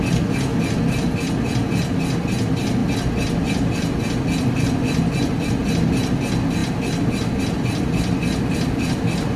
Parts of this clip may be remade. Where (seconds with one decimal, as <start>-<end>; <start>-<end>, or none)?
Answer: none